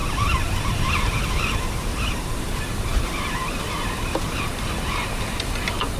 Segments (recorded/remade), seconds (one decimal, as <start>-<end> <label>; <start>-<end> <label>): 0.0-1.2 remade; 1.2-1.9 recorded; 1.9-2.5 remade; 2.5-6.0 recorded